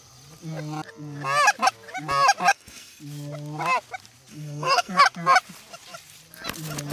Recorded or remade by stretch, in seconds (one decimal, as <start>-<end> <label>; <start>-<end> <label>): 0.0-2.5 recorded; 2.5-3.0 remade; 3.0-4.3 recorded; 4.3-5.0 remade; 5.0-6.9 recorded